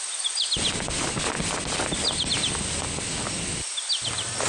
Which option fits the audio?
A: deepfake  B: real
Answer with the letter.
B